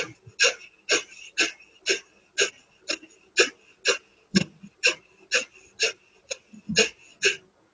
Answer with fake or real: real